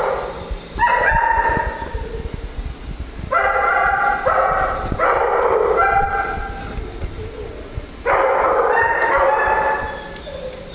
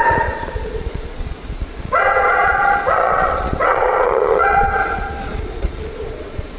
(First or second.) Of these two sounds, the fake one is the second